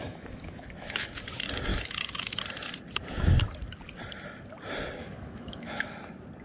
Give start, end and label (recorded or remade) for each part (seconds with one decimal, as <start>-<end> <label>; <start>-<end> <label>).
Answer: 0.0-1.2 remade; 1.2-1.7 recorded; 1.7-2.4 remade; 2.4-5.0 recorded; 5.0-5.8 remade; 5.8-6.4 recorded